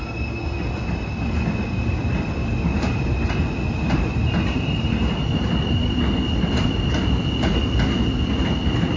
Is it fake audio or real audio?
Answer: real